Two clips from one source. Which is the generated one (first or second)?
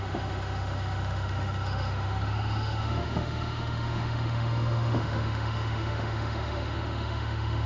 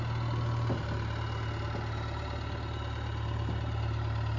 first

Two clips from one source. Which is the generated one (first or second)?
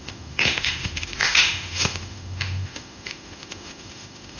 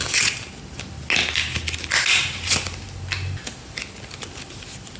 first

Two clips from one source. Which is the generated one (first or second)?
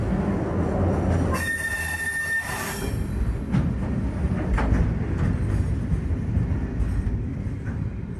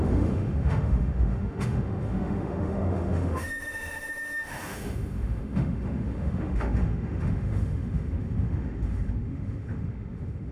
second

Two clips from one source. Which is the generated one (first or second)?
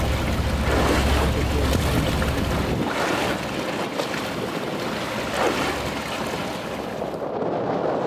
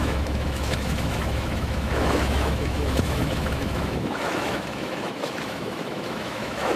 second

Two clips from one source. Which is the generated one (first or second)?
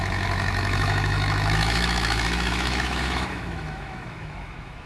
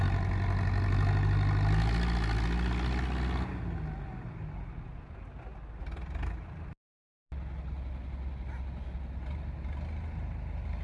first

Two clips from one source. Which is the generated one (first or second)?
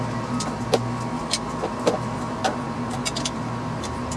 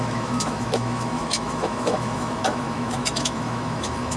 second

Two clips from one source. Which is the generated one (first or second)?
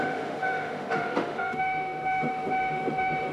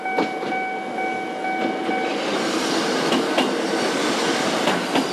first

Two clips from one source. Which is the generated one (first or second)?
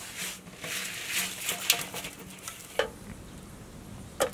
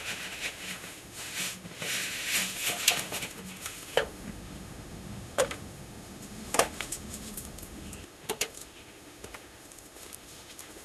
second